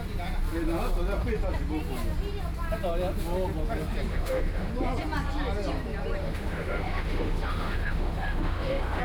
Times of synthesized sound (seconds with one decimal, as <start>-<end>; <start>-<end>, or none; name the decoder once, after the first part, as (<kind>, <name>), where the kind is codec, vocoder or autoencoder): 4.1-4.7 (autoencoder, DAC-VAE); 6.2-9.0